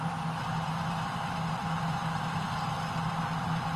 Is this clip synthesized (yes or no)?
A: no